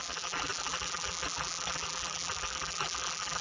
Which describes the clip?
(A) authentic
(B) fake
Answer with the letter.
B